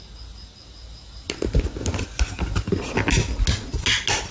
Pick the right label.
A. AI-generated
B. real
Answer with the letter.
B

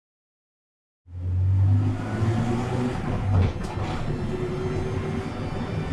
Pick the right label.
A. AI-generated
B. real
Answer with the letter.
B